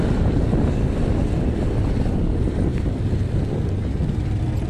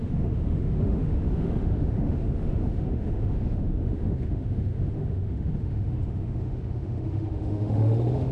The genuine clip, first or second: first